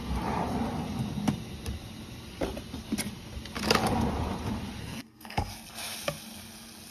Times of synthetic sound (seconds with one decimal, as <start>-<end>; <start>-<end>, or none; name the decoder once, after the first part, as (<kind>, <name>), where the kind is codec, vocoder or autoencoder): 4.8-5.5 (codec, SNAC)